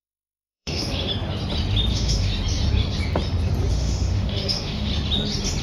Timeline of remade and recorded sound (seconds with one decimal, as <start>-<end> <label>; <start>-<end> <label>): 0.0-1.1 remade; 1.1-1.9 recorded; 1.9-2.3 remade; 2.3-3.7 recorded; 3.7-4.9 remade; 4.9-5.6 recorded